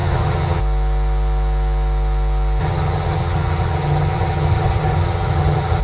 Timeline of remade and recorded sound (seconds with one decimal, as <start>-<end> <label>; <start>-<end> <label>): 0.0-0.6 remade; 0.6-2.6 recorded; 2.6-5.8 remade